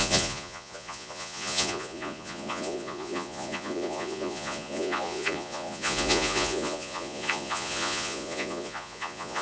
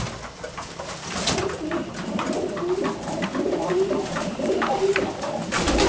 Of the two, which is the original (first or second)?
second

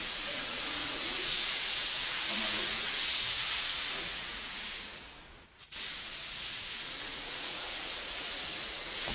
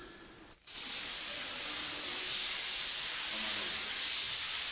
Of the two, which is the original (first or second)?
second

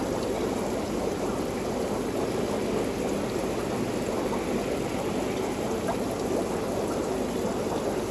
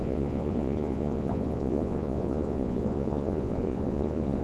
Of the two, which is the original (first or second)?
first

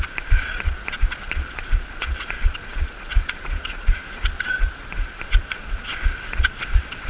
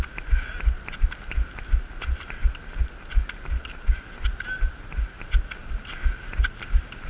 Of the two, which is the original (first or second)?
second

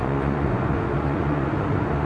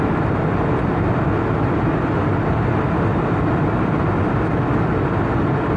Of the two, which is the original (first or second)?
second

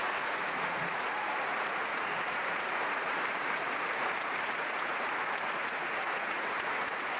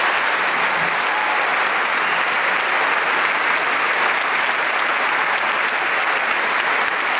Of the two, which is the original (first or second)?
second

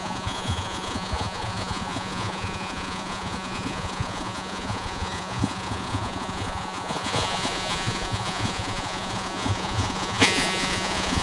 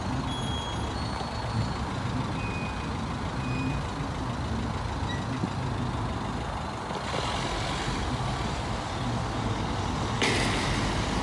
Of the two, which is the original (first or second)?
second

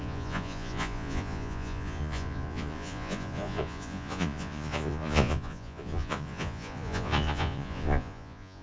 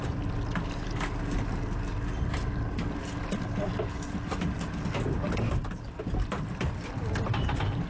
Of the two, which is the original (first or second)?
second